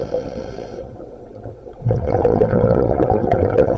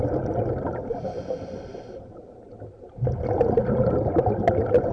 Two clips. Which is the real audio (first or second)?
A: second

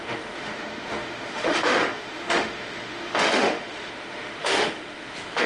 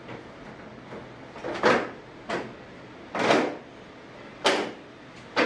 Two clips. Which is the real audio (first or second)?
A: second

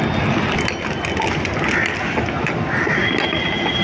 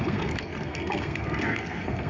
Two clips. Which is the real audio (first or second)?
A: first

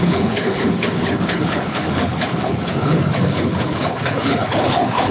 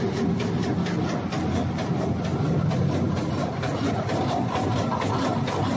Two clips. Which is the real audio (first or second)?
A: second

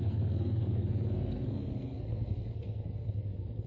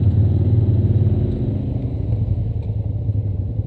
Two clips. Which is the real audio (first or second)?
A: second